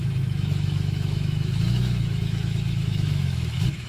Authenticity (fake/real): fake